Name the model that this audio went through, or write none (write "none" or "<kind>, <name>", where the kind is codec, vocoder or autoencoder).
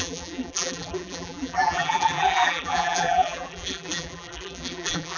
vocoder, BigVGAN v2